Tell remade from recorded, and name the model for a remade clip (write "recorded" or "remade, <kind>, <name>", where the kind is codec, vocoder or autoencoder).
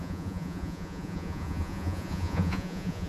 remade, vocoder, Vocos